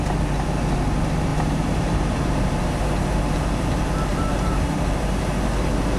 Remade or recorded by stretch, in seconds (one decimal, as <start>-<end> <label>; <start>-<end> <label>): 0.0-1.3 recorded; 1.3-2.6 remade; 2.6-4.1 recorded; 4.1-5.0 remade; 5.0-6.0 recorded